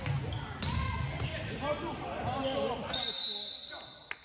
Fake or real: real